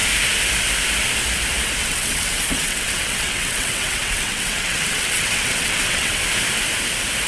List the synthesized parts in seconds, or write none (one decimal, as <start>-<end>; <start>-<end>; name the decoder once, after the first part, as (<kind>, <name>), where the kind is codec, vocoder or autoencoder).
1.8-6.2 (vocoder, WaveNeXt)